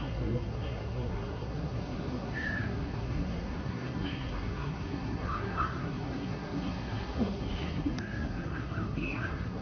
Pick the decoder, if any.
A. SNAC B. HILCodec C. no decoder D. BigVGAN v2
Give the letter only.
A